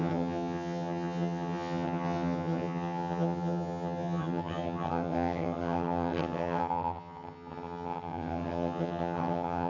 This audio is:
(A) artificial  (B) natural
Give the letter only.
A